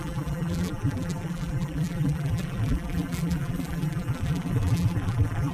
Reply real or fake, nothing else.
fake